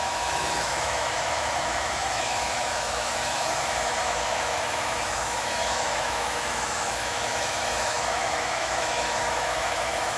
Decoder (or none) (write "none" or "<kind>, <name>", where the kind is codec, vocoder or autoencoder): autoencoder, DAC-VAE